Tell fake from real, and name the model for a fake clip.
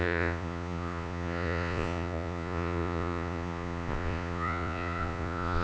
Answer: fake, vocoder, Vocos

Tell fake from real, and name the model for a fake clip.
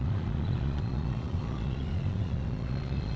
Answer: fake, vocoder, Vocos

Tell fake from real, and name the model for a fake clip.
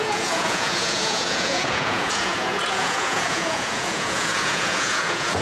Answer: fake, vocoder, Vocos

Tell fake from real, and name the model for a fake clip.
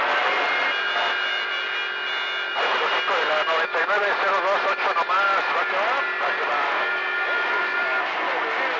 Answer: real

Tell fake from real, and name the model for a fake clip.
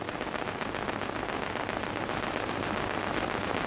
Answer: real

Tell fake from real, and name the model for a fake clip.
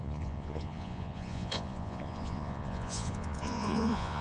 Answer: fake, vocoder, Vocos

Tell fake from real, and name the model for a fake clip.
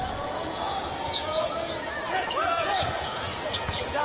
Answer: fake, vocoder, Vocos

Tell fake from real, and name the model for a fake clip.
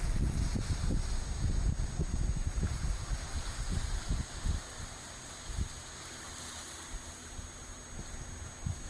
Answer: real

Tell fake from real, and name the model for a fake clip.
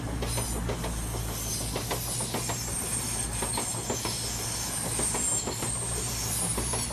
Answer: real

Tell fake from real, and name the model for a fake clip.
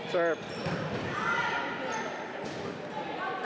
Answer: real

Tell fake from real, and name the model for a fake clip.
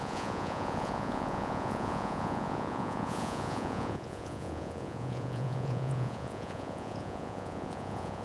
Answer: fake, vocoder, Vocos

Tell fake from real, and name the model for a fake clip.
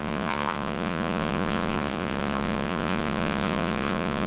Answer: fake, vocoder, Vocos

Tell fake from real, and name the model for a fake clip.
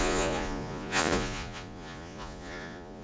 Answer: fake, vocoder, Vocos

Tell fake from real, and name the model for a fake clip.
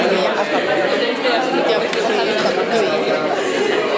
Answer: real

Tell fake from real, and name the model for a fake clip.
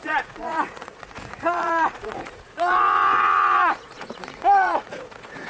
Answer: fake, vocoder, Vocos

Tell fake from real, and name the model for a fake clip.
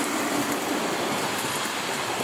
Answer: real